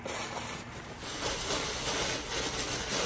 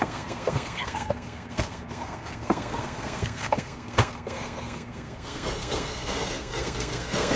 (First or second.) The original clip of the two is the first